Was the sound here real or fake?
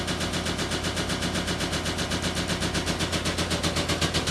real